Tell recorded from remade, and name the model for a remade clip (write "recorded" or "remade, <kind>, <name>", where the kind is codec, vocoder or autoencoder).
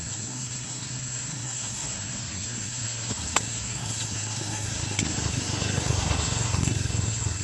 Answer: remade, codec, SNAC